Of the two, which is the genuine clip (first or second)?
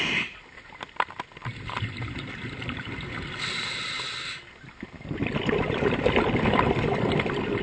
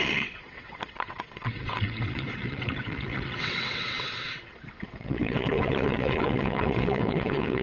first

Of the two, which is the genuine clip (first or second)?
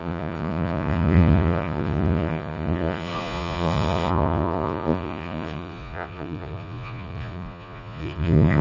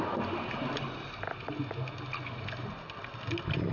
second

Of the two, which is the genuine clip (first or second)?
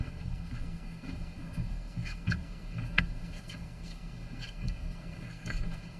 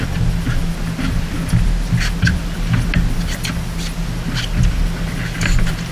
second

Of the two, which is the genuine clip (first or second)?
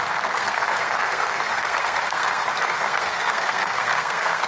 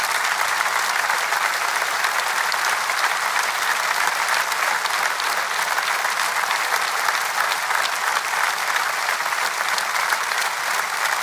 second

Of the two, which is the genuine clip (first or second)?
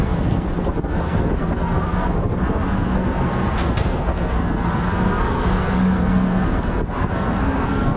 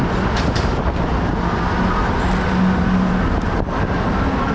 second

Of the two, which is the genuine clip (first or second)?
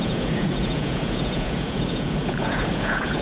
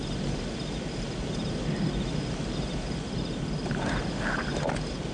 second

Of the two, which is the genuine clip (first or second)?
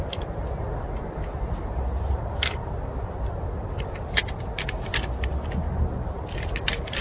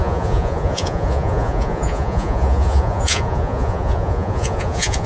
first